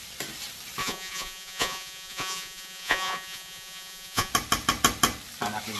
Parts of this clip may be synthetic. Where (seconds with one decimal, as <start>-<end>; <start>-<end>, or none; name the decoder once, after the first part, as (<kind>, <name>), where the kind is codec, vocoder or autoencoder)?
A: 0.8-4.3 (vocoder, Vocos)